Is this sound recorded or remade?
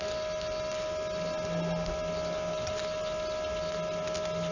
recorded